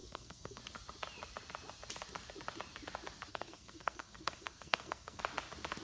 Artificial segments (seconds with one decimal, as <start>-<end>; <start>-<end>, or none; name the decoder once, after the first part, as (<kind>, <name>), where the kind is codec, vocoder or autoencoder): 0.0-0.6 (codec, SNAC); 3.3-5.2